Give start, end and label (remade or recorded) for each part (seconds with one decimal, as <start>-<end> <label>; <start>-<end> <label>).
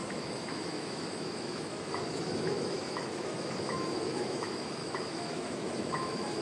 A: 0.0-6.4 remade